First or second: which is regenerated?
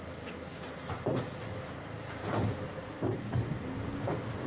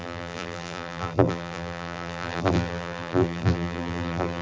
second